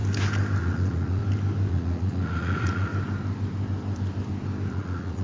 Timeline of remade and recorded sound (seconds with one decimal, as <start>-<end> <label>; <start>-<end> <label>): 0.0-0.6 recorded; 0.6-1.2 remade; 1.2-1.7 recorded; 1.7-2.9 remade; 2.9-4.7 recorded; 4.7-5.2 remade